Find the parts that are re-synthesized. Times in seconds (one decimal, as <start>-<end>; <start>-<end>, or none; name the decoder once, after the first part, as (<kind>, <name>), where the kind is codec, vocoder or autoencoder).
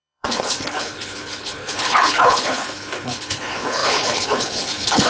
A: 0.0-5.1 (codec, HILCodec)